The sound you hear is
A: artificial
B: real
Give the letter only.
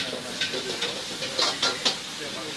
B